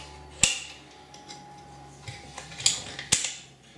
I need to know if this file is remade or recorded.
recorded